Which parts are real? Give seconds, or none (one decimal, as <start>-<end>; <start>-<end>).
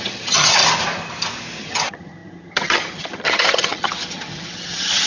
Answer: 0.6-1.6